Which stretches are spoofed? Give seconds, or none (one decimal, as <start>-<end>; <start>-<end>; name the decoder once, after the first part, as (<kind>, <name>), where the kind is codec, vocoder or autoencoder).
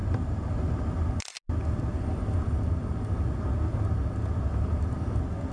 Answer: none